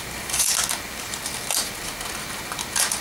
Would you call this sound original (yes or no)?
yes